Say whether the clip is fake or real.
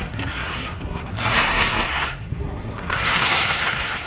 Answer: fake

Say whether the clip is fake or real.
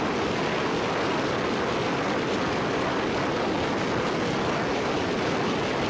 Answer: real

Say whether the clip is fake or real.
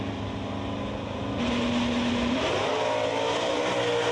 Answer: real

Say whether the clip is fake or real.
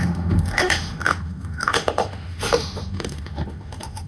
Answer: fake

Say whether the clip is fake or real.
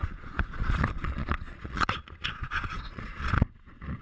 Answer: fake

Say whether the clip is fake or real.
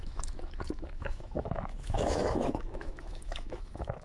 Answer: fake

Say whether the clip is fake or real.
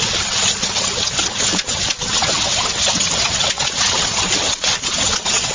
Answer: fake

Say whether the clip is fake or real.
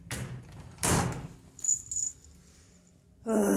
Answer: real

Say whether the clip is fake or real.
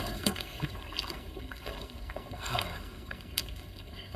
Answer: fake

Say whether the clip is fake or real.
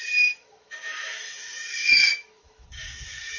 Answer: fake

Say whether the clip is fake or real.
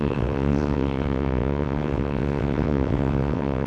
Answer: fake